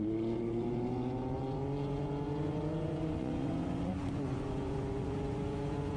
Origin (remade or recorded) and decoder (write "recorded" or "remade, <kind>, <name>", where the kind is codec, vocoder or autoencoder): remade, vocoder, Vocos